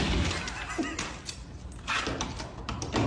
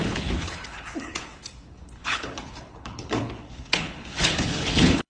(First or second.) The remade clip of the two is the second